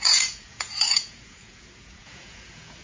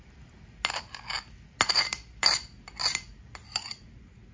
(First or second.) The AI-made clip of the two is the first